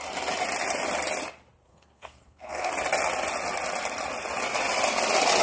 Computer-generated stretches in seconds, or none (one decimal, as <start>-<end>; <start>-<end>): 1.7-2.7